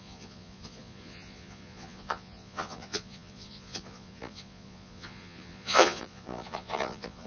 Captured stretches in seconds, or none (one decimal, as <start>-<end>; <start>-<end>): none